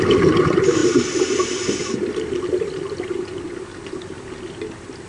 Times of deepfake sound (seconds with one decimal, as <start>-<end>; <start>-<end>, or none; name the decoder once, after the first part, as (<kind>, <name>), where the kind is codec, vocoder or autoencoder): none